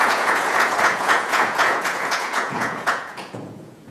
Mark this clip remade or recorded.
remade